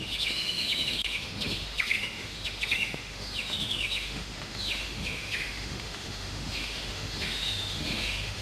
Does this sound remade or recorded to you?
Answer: remade